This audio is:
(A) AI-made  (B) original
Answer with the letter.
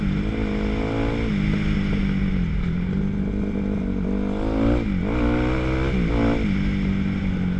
B